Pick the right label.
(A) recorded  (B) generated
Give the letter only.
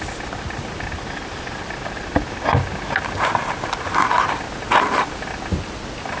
A